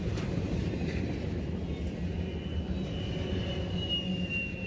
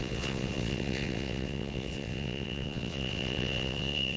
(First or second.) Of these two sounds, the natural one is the first